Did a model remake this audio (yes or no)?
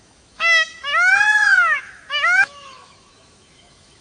yes